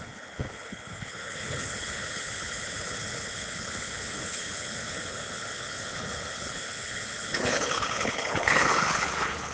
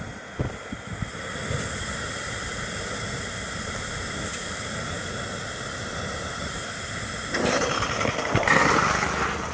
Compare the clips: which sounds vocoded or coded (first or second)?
first